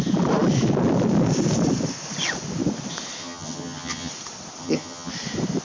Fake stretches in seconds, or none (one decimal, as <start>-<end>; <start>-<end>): 3.2-4.1; 4.6-5.1